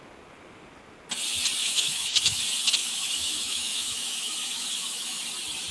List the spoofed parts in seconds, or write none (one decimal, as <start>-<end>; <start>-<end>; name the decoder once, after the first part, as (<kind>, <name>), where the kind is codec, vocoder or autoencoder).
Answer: 1.6-2.4 (autoencoder, DAC-VAE); 2.8-5.2